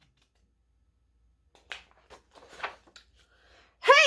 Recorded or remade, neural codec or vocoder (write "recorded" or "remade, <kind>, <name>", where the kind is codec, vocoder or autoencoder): recorded